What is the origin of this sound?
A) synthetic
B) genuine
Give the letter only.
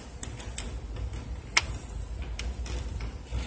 B